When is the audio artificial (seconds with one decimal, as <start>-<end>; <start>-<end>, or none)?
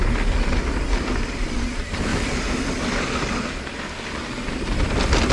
none